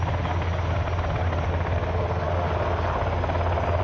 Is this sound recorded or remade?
recorded